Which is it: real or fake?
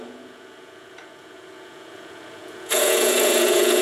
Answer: fake